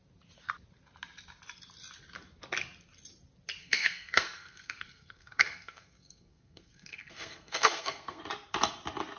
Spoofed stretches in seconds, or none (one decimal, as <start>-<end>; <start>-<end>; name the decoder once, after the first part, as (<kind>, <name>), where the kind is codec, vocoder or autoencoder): 3.6-8.2 (codec, SNAC)